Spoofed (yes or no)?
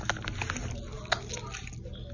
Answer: no